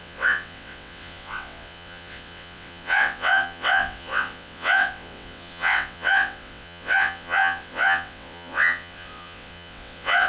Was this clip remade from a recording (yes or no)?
yes